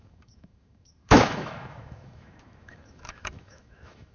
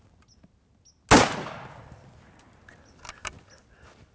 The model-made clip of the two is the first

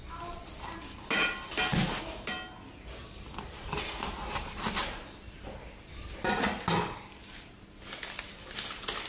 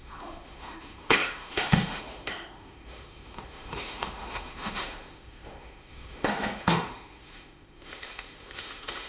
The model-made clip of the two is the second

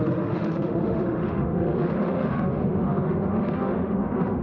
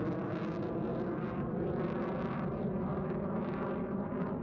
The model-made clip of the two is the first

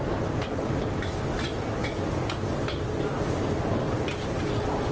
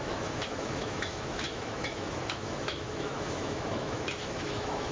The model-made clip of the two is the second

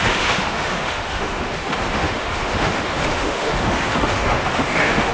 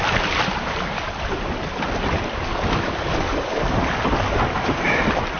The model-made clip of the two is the first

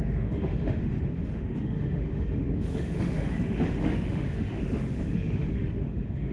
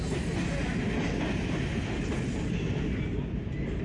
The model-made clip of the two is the first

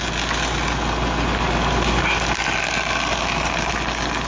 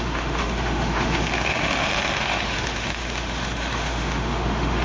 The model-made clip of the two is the second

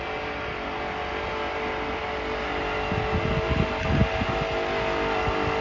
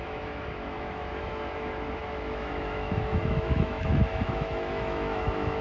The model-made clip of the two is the second